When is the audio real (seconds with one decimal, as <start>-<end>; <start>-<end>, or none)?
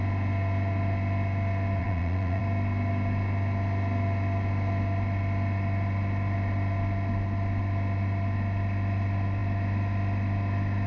0.0-1.8; 2.4-10.9